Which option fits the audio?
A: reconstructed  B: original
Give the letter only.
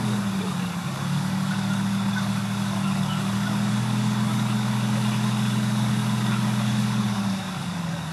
A